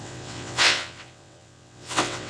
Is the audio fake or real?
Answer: fake